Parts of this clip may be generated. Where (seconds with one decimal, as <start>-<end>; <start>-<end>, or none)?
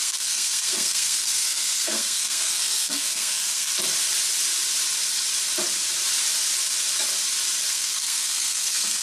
0.0-3.7; 7.7-9.0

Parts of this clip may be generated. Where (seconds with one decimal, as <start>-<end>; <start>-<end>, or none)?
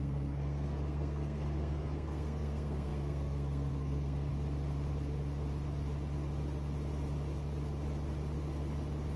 0.0-4.3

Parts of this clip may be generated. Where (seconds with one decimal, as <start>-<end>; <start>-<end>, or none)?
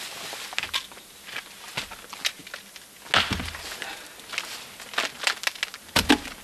none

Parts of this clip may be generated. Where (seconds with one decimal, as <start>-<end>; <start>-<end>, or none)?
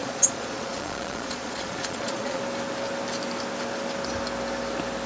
0.0-2.4